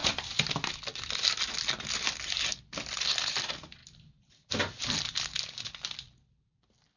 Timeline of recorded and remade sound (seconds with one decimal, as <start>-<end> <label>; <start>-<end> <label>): 0.0-7.0 recorded